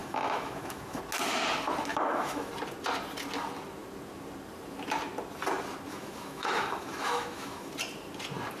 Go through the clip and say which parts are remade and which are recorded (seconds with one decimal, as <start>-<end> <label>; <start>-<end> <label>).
0.0-1.0 remade; 1.0-1.9 recorded; 1.9-2.5 remade; 2.5-5.9 recorded; 5.9-7.7 remade; 7.7-8.6 recorded